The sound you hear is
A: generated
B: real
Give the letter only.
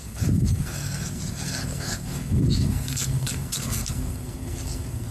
A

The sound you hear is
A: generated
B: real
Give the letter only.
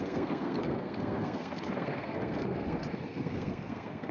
A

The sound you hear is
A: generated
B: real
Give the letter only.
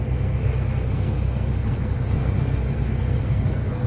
A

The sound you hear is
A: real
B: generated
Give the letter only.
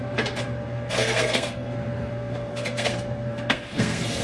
B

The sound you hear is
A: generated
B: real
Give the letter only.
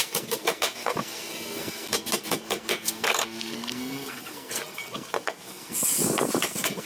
A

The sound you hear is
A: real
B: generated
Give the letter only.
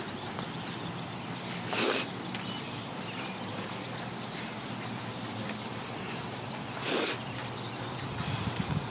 A